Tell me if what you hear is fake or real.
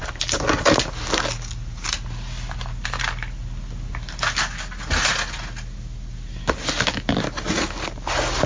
real